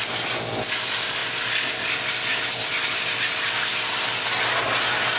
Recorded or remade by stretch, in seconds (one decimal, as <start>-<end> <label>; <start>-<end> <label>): 0.0-5.2 recorded